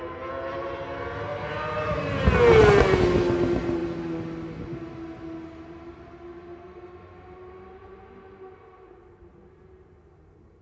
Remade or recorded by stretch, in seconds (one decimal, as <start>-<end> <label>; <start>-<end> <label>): 0.0-10.6 recorded